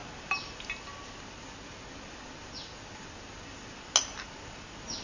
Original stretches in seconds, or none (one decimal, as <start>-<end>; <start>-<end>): 0.0-5.0